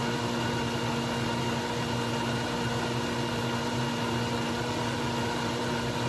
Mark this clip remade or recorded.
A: recorded